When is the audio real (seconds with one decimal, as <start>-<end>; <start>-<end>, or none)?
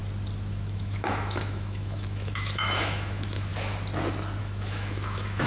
0.0-0.5; 3.5-4.4